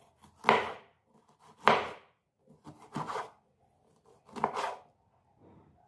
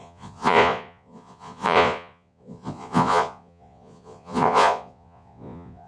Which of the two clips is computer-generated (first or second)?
second